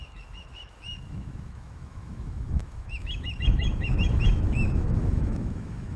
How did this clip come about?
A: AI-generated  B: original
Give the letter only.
A